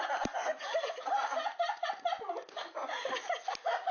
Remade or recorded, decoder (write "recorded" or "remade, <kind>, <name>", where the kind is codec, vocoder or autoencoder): recorded